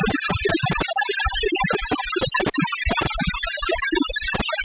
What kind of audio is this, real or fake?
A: real